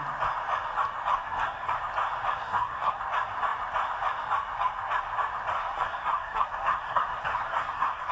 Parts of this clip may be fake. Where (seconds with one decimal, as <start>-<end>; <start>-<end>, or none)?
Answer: 1.1-1.8; 2.4-3.0; 5.5-8.1